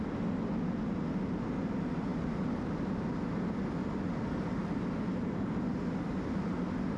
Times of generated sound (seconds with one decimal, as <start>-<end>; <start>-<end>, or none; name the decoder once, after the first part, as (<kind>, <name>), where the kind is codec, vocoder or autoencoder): none